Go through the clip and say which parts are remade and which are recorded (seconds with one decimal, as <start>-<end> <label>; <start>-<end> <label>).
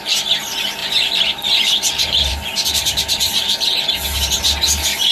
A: 0.0-0.8 recorded; 0.8-3.9 remade; 3.9-5.1 recorded